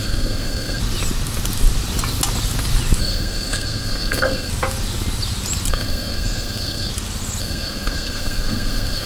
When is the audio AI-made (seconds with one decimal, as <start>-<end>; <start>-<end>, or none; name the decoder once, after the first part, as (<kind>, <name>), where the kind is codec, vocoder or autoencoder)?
0.0-0.8 (codec, SNAC); 3.0-4.5; 5.7-6.9; 7.4-9.1